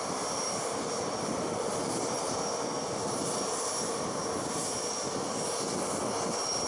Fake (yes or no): no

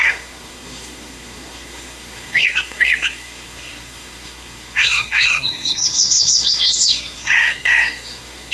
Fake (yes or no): yes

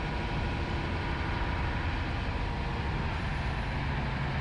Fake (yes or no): no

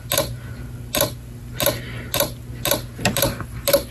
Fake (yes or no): no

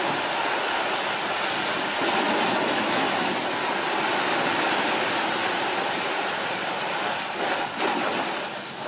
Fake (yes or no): no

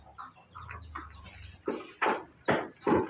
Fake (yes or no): no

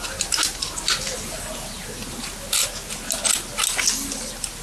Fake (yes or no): no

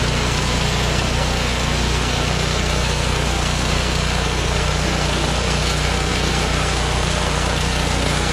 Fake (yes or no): yes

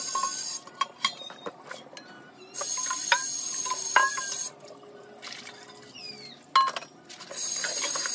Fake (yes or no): no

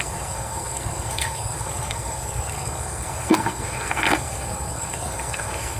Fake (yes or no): yes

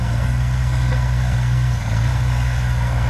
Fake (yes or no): yes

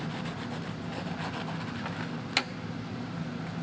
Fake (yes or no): no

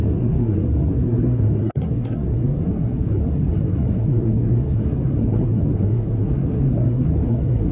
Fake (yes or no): yes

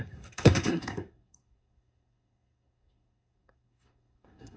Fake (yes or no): yes